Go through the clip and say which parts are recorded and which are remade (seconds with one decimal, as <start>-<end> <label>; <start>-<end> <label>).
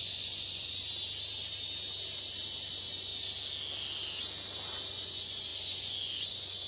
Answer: 0.0-0.8 remade; 0.8-2.7 recorded; 2.7-3.1 remade; 3.1-4.9 recorded; 4.9-6.7 remade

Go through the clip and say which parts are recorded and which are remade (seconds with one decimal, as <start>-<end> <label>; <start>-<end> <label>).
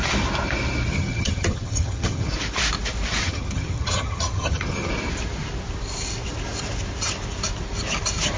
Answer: 0.0-0.9 recorded; 0.9-2.3 remade; 2.3-3.2 recorded; 3.2-4.9 remade; 4.9-8.4 recorded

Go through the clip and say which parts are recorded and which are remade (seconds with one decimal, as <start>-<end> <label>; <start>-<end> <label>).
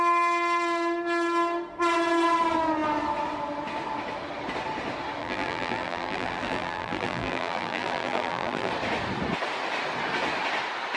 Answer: 0.0-5.2 recorded; 5.2-8.7 remade; 8.7-11.0 recorded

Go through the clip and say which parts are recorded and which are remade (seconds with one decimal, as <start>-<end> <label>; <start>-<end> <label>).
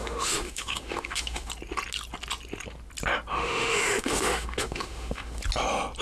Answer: 0.0-1.5 remade; 1.5-3.3 recorded; 3.3-5.4 remade; 5.4-6.0 recorded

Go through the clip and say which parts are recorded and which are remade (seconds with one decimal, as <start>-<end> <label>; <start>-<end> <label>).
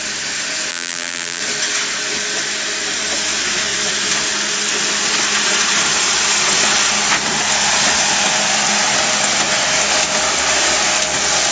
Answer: 0.0-0.7 recorded; 0.7-1.4 remade; 1.4-11.5 recorded